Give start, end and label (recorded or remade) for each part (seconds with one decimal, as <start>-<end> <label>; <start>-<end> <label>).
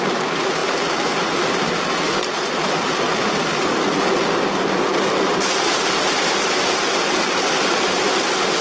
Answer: 0.0-8.6 recorded